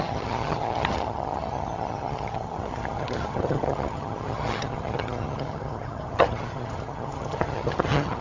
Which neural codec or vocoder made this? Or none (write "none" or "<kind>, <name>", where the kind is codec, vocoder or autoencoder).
vocoder, HiFi-GAN